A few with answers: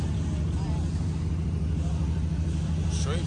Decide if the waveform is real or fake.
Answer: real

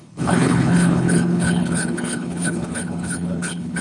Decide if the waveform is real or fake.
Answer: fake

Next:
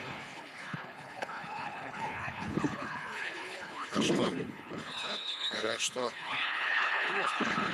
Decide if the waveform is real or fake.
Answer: fake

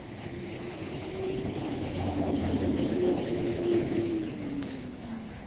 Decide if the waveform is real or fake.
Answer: fake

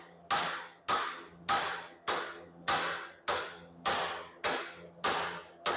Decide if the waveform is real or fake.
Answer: real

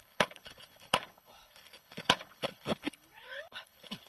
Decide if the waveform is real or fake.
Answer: fake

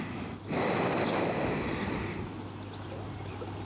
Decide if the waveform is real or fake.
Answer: real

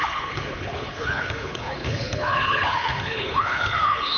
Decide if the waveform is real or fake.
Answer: fake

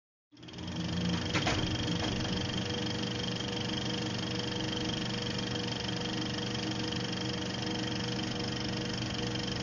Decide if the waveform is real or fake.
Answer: real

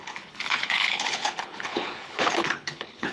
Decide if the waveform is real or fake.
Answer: fake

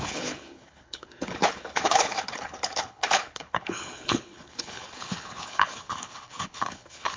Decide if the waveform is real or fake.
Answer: fake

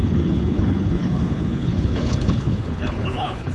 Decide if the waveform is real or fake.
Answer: fake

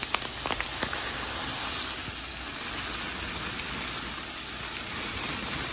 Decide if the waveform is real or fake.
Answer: real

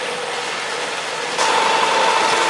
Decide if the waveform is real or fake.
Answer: real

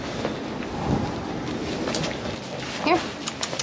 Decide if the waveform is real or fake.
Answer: real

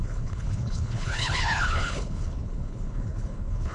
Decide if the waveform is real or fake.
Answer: fake